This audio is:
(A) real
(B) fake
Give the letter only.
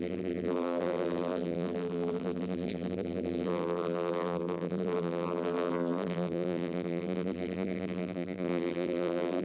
B